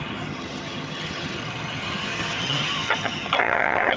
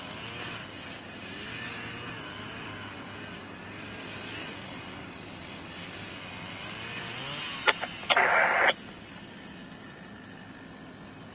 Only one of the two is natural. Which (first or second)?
second